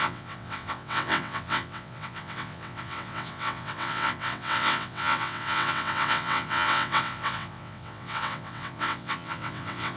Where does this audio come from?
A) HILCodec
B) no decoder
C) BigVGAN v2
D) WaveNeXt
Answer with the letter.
D